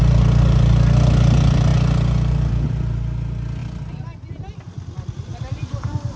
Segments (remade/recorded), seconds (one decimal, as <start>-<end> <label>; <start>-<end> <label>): 0.0-6.2 recorded